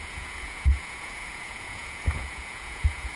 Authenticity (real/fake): fake